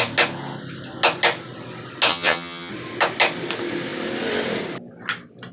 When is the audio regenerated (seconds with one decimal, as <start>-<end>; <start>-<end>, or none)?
2.1-2.7